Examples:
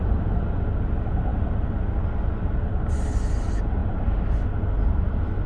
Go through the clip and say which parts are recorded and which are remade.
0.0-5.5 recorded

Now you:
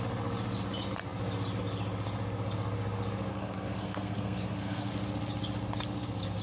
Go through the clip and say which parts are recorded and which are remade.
0.0-3.3 recorded; 3.3-4.9 remade; 4.9-6.4 recorded

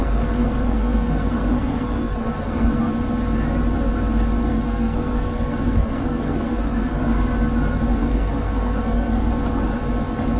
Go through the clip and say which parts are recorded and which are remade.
0.0-2.8 remade; 2.8-4.5 recorded; 4.5-7.0 remade; 7.0-8.0 recorded; 8.0-9.3 remade; 9.3-10.4 recorded

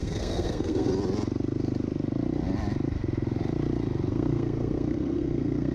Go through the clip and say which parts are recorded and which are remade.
0.0-0.9 remade; 0.9-4.1 recorded; 4.1-5.7 remade

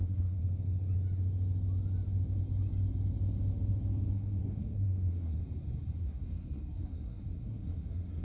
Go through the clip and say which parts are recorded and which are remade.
0.0-0.4 remade; 0.4-4.1 recorded; 4.1-5.4 remade; 5.4-6.0 recorded; 6.0-8.2 remade

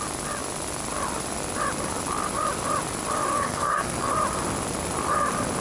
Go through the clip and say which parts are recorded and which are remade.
0.0-3.3 recorded; 3.3-4.1 remade; 4.1-5.6 recorded